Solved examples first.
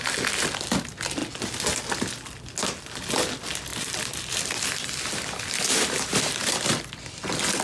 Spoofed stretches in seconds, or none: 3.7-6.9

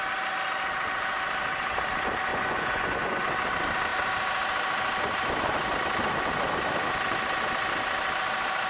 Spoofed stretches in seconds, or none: 2.3-3.2

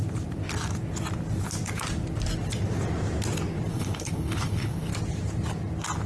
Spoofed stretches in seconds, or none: 3.7-4.9

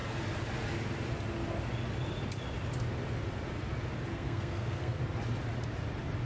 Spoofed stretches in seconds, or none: 4.1-5.0

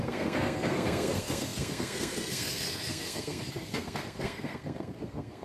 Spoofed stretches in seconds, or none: 0.0-5.4